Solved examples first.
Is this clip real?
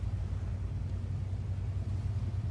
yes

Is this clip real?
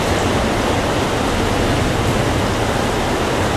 yes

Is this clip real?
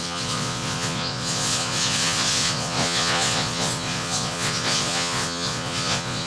no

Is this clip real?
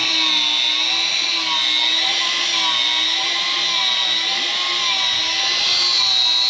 yes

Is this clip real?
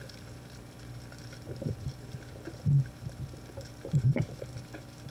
no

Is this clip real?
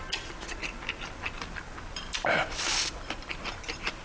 yes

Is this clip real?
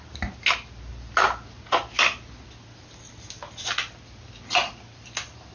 yes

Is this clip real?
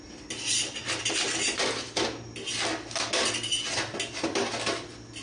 yes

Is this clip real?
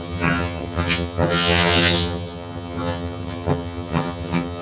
no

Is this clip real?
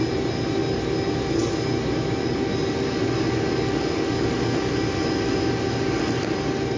yes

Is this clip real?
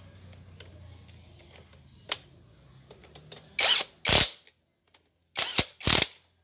yes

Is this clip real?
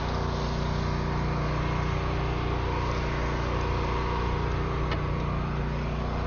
yes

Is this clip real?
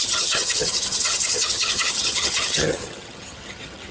no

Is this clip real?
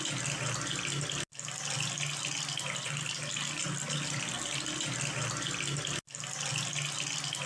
yes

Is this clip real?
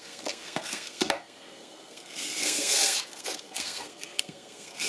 no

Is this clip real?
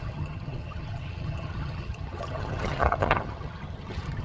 no